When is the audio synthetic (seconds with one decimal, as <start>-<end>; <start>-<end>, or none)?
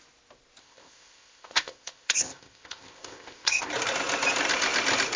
0.6-3.7